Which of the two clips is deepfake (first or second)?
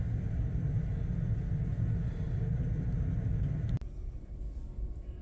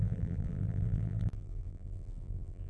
second